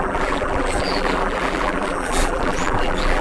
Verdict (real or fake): fake